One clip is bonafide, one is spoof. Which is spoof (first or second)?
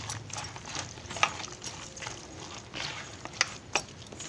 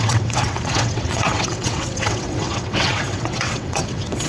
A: second